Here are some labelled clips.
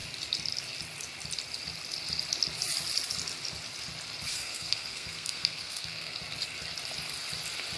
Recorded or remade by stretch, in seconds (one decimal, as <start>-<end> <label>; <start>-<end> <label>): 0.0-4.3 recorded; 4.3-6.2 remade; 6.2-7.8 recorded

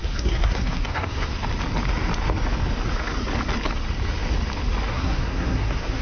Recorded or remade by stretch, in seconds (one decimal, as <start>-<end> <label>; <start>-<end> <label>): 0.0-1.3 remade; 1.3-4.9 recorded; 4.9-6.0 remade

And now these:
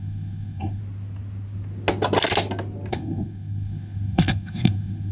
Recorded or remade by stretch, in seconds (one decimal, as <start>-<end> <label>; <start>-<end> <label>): 0.0-0.8 remade; 0.8-2.9 recorded; 2.9-5.1 remade

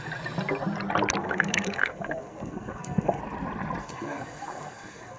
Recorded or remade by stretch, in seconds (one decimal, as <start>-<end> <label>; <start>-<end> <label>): 0.0-1.2 recorded; 1.2-3.2 remade; 3.2-3.8 recorded; 3.8-5.2 remade

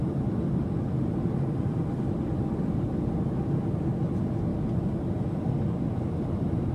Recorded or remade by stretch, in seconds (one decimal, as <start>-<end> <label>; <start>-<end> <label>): 0.0-6.7 recorded

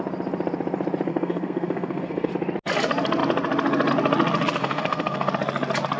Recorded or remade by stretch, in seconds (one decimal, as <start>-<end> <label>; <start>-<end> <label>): 0.0-1.1 recorded; 1.1-2.3 remade; 2.3-4.6 recorded; 4.6-5.3 remade; 5.3-6.0 recorded

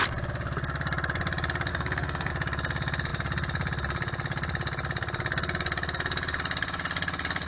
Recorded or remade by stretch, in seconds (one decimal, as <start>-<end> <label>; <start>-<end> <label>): 0.0-1.7 recorded; 1.7-2.3 remade; 2.3-7.5 recorded